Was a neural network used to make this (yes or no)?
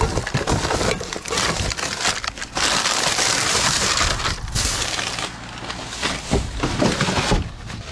no